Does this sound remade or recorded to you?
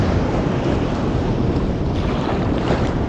remade